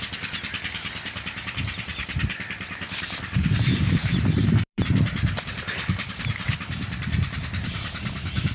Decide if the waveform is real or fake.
fake